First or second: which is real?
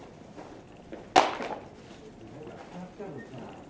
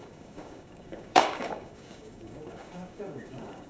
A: first